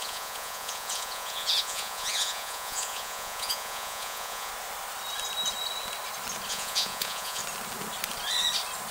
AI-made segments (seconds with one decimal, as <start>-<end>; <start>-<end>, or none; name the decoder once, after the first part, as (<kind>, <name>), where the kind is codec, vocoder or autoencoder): 0.0-4.5 (vocoder, Vocos); 6.5-7.4